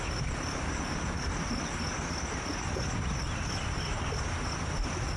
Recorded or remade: recorded